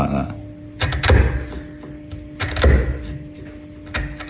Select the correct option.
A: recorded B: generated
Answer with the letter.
A